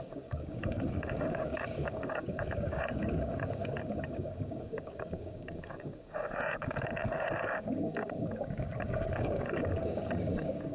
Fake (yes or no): yes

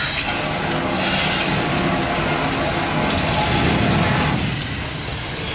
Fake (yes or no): no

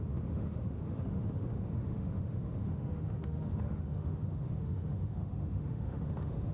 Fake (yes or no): yes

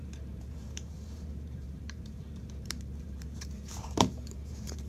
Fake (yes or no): yes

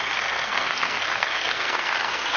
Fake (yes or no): yes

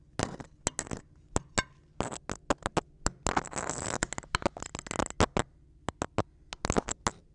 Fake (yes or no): no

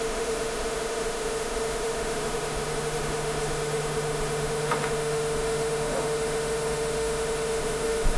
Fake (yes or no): yes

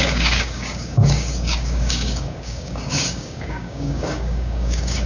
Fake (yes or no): yes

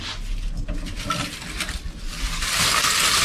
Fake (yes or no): no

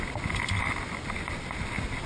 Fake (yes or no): no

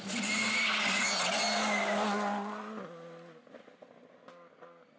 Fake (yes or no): no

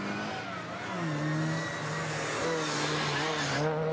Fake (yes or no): no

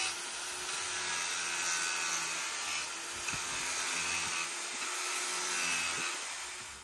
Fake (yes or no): no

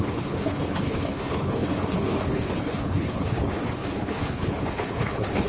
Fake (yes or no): yes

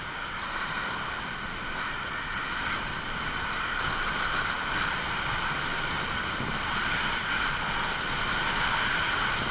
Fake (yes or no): no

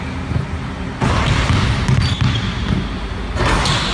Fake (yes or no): no